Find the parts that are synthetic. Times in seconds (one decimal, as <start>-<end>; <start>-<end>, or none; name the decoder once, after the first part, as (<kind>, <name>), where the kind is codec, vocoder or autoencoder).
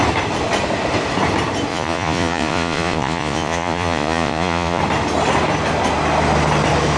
1.7-4.8 (vocoder, Vocos)